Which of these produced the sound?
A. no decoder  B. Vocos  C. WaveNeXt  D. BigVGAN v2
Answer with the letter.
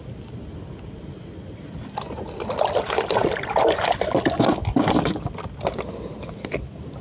A